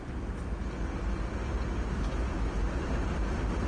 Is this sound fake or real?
real